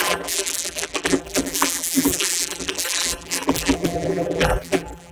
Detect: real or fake fake